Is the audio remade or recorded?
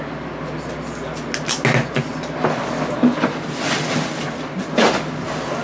recorded